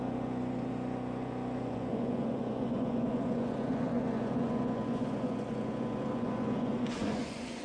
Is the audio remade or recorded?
remade